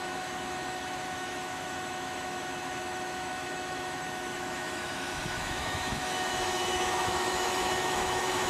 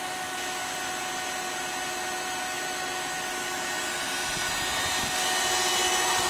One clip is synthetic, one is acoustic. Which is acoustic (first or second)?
second